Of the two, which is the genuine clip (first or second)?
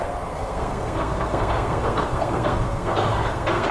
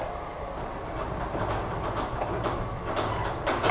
second